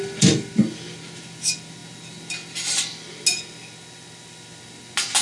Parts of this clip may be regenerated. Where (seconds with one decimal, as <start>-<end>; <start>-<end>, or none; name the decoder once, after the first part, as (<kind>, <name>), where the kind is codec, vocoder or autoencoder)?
none